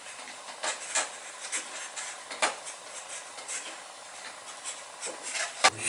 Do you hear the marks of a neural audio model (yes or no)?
yes